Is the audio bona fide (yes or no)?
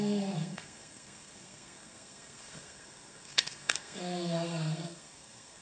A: no